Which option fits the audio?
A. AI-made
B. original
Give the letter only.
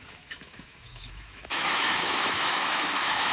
A